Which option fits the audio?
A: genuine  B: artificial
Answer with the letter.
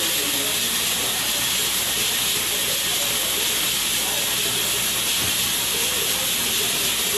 A